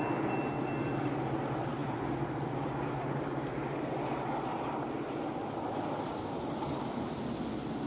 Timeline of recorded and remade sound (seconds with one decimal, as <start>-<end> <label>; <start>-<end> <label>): 0.0-7.9 recorded